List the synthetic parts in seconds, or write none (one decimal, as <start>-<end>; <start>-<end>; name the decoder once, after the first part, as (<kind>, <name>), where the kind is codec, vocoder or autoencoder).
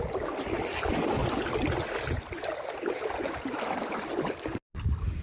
none